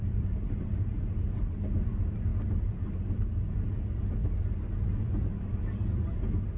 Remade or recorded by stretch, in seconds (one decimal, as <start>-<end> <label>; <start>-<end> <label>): 0.0-6.6 recorded